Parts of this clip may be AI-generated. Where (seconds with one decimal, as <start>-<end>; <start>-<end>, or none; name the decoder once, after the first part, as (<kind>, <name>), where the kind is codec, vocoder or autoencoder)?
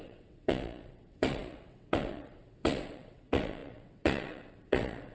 0.0-5.1 (vocoder, WaveNeXt)